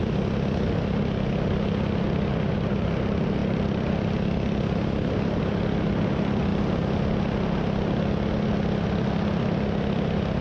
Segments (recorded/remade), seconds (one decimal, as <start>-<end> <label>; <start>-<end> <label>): 0.0-3.4 recorded; 3.4-3.9 remade; 3.9-10.4 recorded